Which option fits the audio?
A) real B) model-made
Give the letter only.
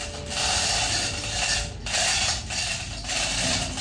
A